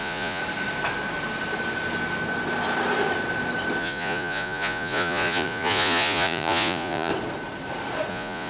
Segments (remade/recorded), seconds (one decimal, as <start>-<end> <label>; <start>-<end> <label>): 0.0-0.4 remade; 0.4-3.8 recorded; 3.8-7.1 remade; 7.1-8.1 recorded; 8.1-8.5 remade

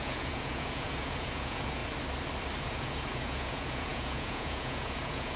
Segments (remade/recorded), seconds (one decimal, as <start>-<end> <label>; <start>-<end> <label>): 0.0-1.8 remade; 1.8-2.6 recorded; 2.6-5.4 remade

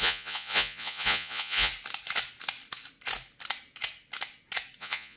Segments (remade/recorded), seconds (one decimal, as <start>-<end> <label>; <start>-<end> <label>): 0.0-1.7 remade; 1.7-4.8 recorded; 4.8-5.2 remade